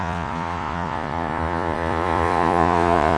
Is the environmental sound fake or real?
fake